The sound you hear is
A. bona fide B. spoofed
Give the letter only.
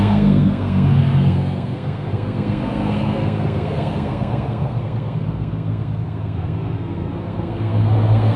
B